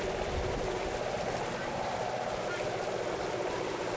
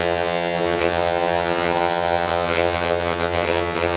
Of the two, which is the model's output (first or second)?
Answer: second